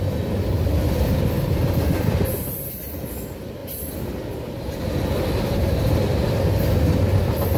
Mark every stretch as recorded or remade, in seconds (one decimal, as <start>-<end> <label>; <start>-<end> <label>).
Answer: 0.0-7.6 recorded